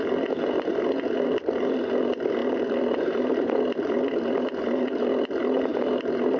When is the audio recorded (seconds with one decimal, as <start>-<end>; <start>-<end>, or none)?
0.0-0.7; 1.7-2.4; 5.3-6.4